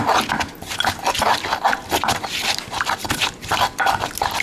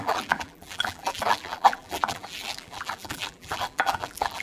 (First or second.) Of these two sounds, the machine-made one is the second